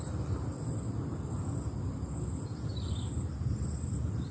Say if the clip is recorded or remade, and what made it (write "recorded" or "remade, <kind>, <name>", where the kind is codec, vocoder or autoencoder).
recorded